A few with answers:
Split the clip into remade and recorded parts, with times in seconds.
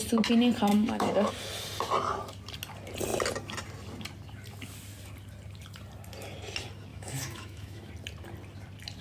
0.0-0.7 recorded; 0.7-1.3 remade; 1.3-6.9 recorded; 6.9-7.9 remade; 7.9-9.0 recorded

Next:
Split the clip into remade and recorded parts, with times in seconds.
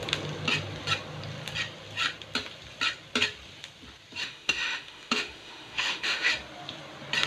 0.0-4.2 recorded; 4.2-6.3 remade; 6.3-7.3 recorded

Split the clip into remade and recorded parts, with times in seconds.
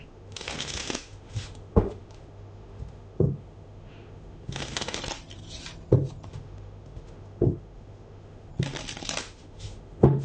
0.0-5.0 remade; 5.0-6.3 recorded; 6.3-8.5 remade; 8.5-9.2 recorded; 9.2-10.2 remade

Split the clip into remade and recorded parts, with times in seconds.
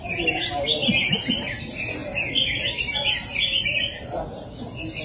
0.0-5.0 recorded